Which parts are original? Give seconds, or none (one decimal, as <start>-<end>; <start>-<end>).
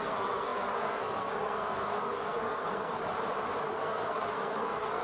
3.0-3.6